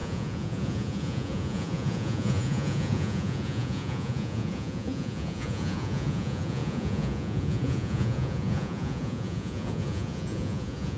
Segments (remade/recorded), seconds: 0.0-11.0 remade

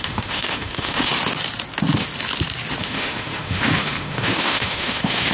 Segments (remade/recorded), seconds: 0.0-1.1 remade; 1.1-2.8 recorded; 2.8-5.3 remade

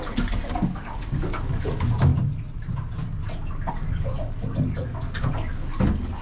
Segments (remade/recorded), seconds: 0.0-2.1 remade; 2.1-3.7 recorded; 3.7-6.2 remade

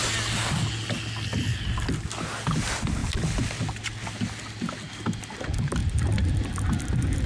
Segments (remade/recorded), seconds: 0.0-5.8 recorded; 5.8-6.8 remade; 6.8-7.3 recorded